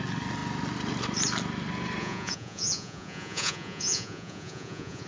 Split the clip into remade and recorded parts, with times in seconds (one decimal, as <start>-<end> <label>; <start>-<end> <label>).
0.0-2.0 recorded; 2.0-5.1 remade